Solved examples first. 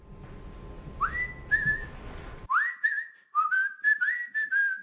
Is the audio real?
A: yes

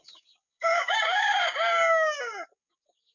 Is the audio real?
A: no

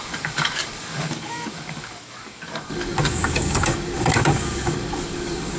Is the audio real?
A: no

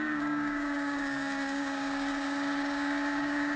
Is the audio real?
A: no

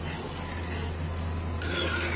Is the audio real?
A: yes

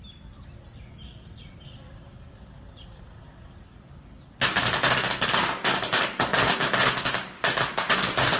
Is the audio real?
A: yes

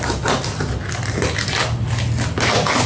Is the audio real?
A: yes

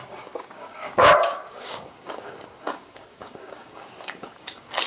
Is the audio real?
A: no